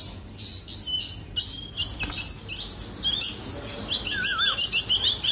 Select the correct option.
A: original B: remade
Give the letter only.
A